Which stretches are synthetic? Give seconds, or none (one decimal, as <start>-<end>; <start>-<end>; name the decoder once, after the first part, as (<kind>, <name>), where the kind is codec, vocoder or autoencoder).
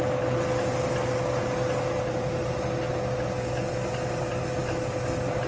none